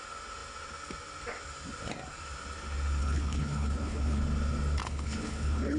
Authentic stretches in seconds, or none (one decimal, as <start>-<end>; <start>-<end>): 0.0-3.0; 4.2-4.8